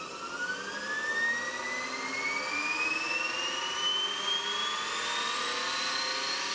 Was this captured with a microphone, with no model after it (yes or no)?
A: yes